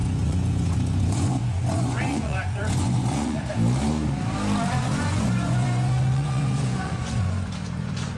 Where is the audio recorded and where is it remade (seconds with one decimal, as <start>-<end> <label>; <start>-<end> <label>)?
0.0-3.4 remade; 3.4-4.8 recorded; 4.8-8.2 remade